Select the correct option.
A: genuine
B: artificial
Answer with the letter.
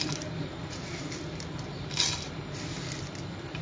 A